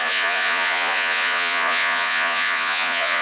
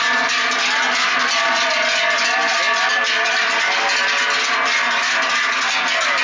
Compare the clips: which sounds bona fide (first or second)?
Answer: second